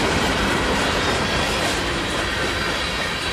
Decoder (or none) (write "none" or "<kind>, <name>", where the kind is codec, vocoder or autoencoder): none